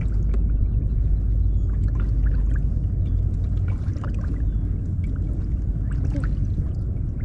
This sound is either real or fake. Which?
real